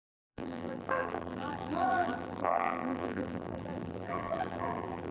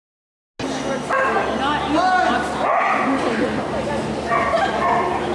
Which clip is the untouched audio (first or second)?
second